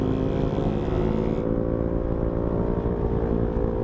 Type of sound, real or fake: real